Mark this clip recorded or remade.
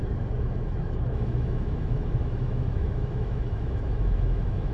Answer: remade